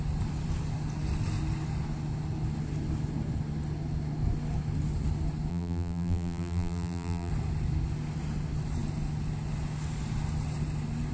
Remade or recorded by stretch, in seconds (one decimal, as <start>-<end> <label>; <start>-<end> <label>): 0.0-5.5 recorded; 5.5-7.3 remade; 7.3-11.1 recorded